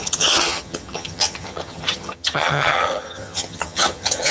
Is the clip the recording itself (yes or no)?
no